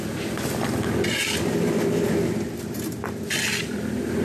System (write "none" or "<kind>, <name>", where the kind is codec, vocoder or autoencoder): none